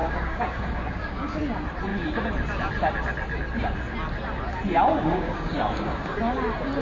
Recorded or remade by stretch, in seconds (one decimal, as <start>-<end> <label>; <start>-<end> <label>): 0.0-1.4 remade; 1.4-4.9 recorded; 4.9-6.2 remade; 6.2-6.8 recorded